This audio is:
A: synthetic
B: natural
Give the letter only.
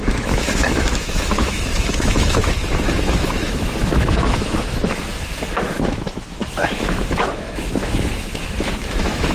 A